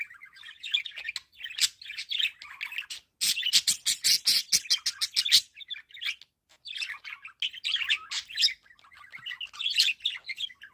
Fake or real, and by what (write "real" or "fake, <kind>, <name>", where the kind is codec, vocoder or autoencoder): real